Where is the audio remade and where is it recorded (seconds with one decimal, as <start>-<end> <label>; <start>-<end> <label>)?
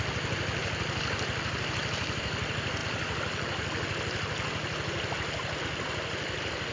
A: 0.0-6.7 remade